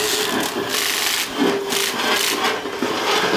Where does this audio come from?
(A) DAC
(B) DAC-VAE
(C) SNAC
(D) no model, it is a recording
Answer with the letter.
D